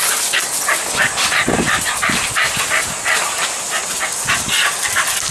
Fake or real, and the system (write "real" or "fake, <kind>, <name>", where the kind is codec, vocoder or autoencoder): real